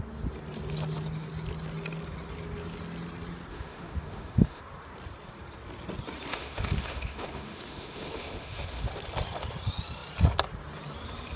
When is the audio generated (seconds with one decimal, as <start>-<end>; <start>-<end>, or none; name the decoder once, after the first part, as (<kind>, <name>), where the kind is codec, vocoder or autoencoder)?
3.5-4.6 (autoencoder, DAC-VAE); 6.3-8.9